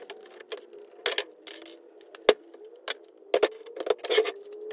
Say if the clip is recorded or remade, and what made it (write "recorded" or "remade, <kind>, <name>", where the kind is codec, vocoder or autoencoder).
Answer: recorded